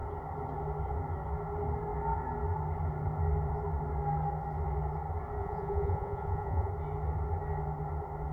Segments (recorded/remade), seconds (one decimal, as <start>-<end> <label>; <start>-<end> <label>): 0.0-5.4 recorded; 5.4-6.7 remade; 6.7-8.3 recorded